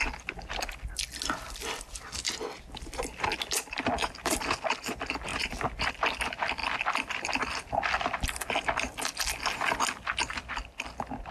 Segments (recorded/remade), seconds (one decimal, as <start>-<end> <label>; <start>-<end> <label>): 0.0-11.3 recorded